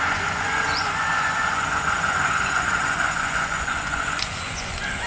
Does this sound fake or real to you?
fake